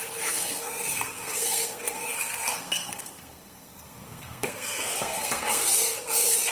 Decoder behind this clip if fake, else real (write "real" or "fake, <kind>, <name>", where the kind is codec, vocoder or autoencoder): fake, codec, SNAC